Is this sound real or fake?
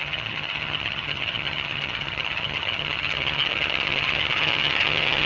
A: fake